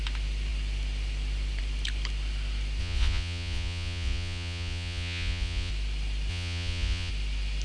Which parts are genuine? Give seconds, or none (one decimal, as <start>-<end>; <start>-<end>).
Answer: 0.0-2.8; 5.7-6.3; 7.1-7.6

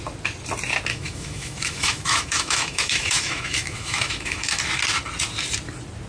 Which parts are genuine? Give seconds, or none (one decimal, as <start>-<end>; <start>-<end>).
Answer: 0.0-0.9; 4.6-6.1

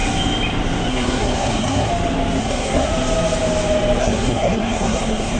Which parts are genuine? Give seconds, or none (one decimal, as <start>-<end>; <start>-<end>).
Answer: 0.0-0.9; 1.9-2.4; 2.9-4.0

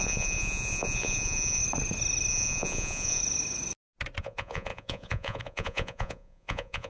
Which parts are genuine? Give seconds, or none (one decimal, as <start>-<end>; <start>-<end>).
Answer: 1.6-2.3; 3.2-4.2

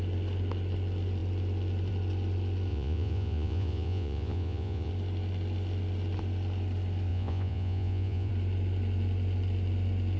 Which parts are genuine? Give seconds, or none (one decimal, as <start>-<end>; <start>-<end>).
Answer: 0.0-2.7; 4.9-7.1; 8.3-10.2

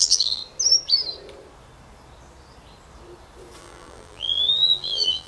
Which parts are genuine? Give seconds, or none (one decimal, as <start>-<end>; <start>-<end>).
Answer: 0.4-3.6

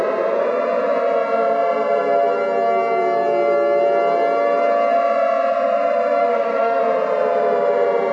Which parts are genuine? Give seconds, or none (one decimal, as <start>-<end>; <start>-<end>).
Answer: 0.0-6.2; 6.8-8.1

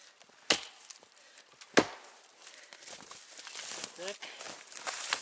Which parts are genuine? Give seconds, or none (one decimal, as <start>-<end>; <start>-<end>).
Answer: 0.0-5.2